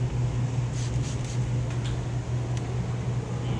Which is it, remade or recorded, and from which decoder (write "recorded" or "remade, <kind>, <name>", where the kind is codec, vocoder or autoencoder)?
recorded